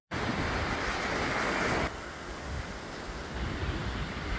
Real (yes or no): yes